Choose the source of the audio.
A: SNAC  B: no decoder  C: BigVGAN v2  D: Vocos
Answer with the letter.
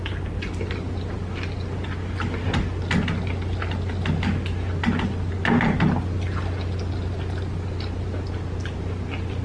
B